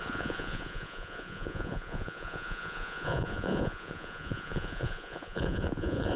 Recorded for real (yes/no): no